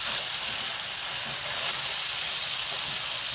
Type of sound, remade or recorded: recorded